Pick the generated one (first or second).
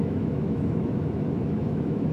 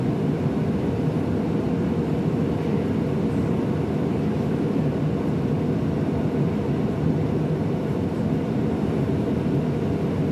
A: first